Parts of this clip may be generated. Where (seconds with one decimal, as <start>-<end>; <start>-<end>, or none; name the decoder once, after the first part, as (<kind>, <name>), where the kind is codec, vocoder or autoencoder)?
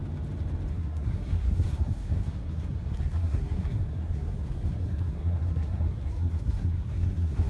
0.7-7.5 (codec, SNAC)